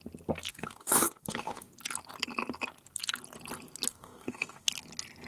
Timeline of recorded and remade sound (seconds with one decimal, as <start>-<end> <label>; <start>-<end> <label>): 0.0-0.5 recorded; 0.5-1.7 remade; 1.7-3.9 recorded; 3.9-4.7 remade; 4.7-5.3 recorded